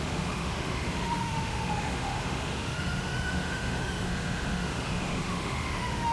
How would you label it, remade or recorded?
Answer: remade